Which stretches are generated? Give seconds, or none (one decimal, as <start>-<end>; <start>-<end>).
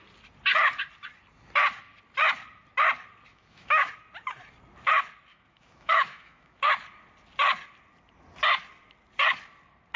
3.3-3.9; 5.3-6.7